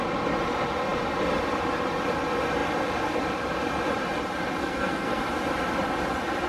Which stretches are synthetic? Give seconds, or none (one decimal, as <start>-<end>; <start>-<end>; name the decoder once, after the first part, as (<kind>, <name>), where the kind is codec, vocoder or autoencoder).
4.6-5.2 (codec, SNAC)